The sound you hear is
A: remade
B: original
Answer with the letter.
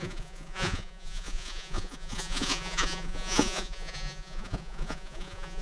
A